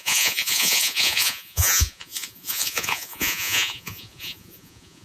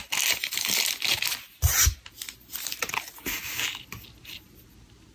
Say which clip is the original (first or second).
second